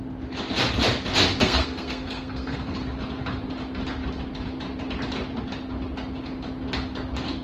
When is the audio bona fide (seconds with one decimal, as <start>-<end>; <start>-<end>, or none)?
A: 0.0-1.4; 2.8-7.4